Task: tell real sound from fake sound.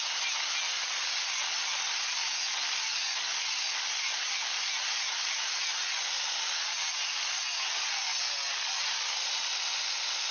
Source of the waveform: real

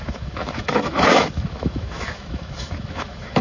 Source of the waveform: fake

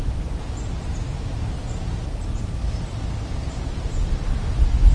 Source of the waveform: real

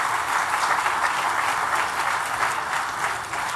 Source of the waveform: real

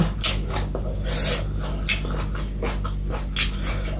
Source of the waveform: real